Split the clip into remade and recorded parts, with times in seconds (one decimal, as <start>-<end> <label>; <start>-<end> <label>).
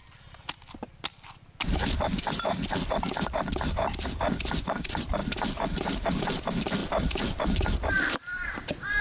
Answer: 0.0-5.2 recorded; 5.2-6.2 remade; 6.2-6.8 recorded; 6.8-8.5 remade; 8.5-9.0 recorded